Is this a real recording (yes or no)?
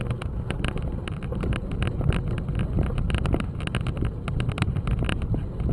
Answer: yes